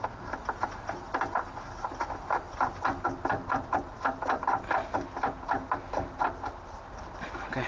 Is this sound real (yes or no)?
yes